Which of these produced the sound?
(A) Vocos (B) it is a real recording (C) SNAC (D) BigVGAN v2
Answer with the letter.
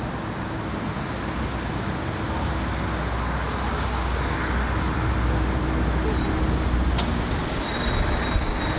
B